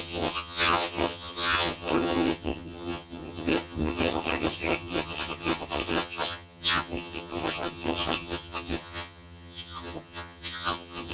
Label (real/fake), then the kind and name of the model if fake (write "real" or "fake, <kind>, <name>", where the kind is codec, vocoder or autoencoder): fake, vocoder, HiFi-GAN